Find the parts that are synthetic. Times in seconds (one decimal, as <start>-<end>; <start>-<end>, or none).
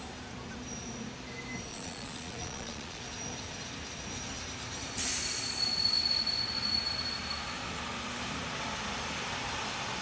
1.7-3.0